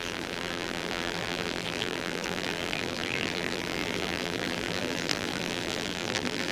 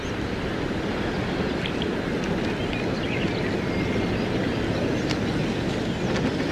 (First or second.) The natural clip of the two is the second